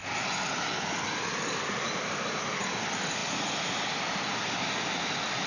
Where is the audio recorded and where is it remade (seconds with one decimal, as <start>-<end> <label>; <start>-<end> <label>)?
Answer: 0.0-5.5 recorded